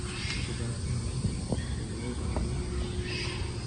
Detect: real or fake real